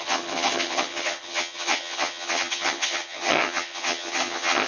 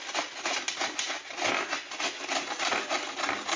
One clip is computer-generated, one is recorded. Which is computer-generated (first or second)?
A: first